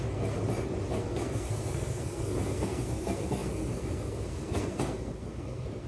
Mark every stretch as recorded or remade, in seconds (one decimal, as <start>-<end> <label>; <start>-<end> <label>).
0.0-0.4 remade; 0.4-0.9 recorded; 0.9-5.9 remade